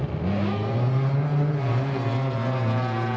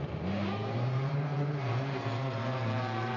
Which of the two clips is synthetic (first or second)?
second